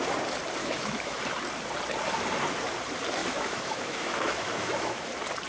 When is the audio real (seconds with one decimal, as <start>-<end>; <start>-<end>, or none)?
0.0-0.6; 1.2-3.2; 5.1-5.5